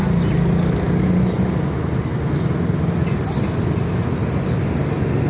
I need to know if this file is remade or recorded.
recorded